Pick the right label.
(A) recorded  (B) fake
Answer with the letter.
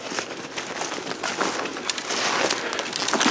A